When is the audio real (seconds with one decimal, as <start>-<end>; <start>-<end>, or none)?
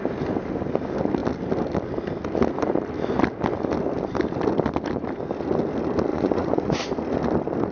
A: 0.0-6.1; 6.8-7.7